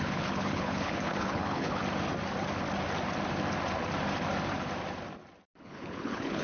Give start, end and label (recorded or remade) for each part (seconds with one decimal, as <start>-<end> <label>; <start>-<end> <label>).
0.0-1.8 remade; 1.8-5.6 recorded; 5.6-6.4 remade